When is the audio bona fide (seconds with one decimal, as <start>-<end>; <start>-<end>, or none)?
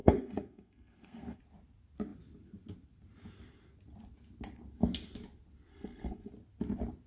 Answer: 1.4-5.7; 6.3-7.1